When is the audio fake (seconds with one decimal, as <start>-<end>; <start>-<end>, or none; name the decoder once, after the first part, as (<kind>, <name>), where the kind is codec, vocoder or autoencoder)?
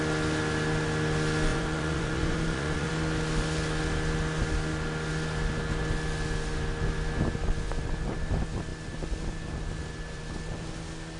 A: 1.5-2.9 (vocoder, Vocos)